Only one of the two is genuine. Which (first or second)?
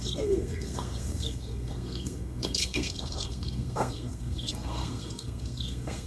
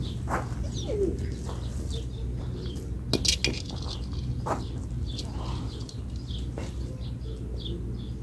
second